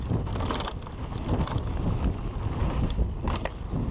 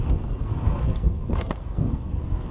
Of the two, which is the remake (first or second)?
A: second